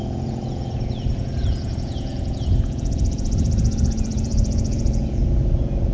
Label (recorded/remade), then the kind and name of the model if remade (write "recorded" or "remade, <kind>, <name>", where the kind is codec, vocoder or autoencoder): remade, vocoder, Vocos